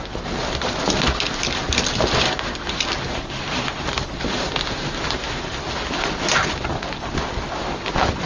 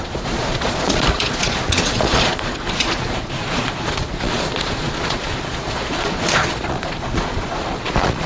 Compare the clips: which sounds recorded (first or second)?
first